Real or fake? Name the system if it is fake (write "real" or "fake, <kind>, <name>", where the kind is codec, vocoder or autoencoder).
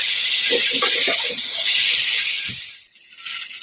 real